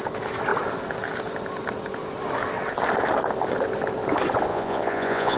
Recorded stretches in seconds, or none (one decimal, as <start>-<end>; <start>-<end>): 0.0-4.5